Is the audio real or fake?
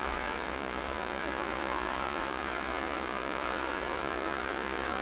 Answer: fake